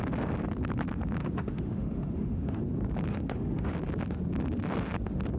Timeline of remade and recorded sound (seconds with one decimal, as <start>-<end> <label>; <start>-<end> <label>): 0.0-1.2 recorded; 1.2-2.6 remade; 2.6-3.1 recorded; 3.1-3.7 remade; 3.7-5.4 recorded